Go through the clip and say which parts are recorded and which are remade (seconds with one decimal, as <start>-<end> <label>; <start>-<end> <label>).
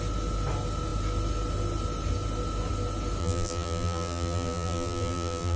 0.0-3.2 recorded; 3.2-5.6 remade